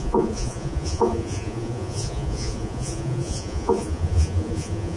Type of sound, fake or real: fake